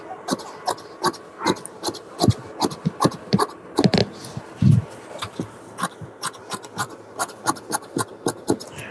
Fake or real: real